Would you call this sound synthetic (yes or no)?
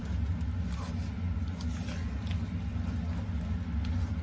no